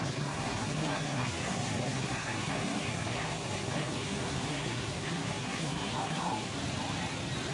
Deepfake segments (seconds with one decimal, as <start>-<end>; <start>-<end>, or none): 0.0-6.6